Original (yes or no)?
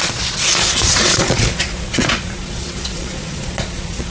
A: no